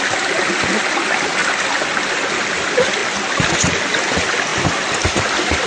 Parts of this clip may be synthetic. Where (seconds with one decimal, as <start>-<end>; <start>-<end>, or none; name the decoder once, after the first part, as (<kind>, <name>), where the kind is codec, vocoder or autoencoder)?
none